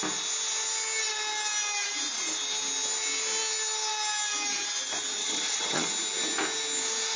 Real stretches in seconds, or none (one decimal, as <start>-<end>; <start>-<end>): 0.0-5.2; 5.9-7.2